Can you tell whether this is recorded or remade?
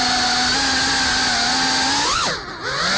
recorded